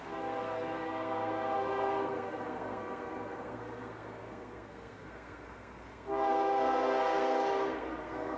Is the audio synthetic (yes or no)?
yes